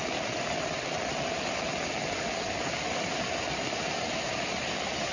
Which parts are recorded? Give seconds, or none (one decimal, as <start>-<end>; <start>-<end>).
0.0-5.1